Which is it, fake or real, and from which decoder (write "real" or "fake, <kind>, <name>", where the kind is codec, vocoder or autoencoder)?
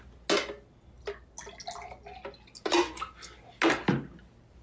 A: real